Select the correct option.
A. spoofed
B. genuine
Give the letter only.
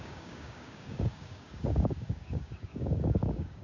A